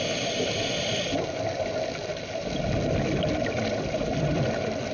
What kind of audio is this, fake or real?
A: real